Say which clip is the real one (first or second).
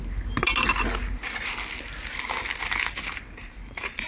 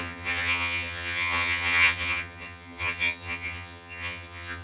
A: first